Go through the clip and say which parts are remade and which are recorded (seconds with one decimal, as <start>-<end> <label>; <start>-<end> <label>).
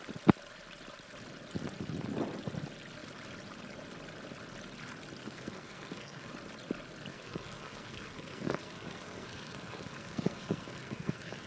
0.0-5.2 recorded; 5.2-6.3 remade; 6.3-7.1 recorded; 7.1-11.5 remade